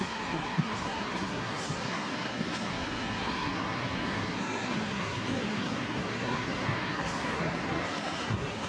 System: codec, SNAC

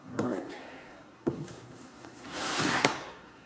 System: codec, SNAC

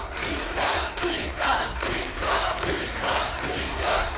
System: codec, SNAC